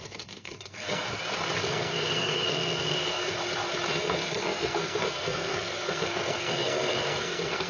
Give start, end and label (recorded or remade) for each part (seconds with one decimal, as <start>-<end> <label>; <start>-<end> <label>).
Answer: 0.0-1.2 remade; 1.2-1.7 recorded; 1.7-3.4 remade; 3.4-4.0 recorded; 4.0-7.7 remade